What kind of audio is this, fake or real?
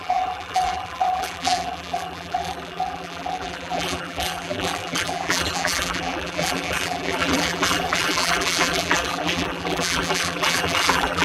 fake